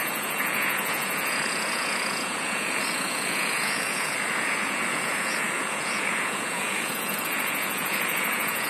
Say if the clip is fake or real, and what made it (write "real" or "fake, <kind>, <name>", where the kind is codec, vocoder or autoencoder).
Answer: fake, vocoder, Vocos